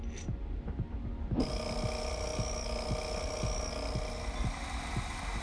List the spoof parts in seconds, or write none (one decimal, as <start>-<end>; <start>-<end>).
none